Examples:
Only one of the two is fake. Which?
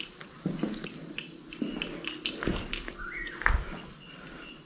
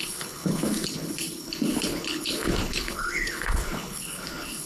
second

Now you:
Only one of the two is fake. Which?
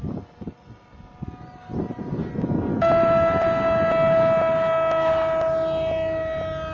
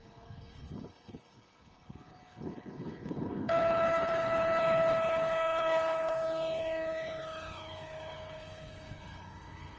second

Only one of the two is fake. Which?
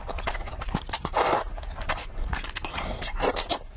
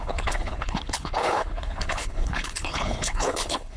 second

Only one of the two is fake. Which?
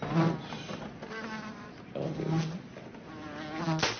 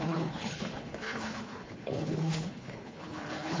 second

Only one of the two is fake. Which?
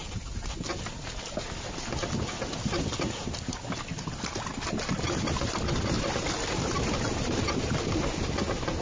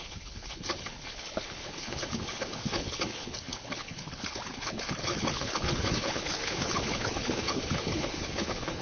second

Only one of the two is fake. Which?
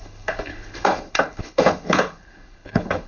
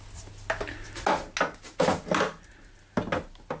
first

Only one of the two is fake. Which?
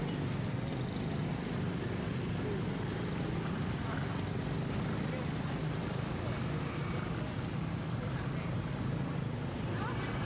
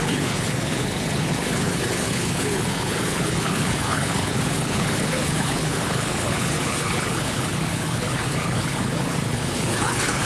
second